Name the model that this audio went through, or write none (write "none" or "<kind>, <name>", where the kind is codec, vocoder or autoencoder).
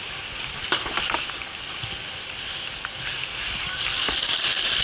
none